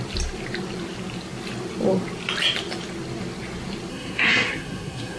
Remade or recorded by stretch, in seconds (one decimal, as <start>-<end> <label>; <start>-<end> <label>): 0.0-3.9 recorded; 3.9-5.2 remade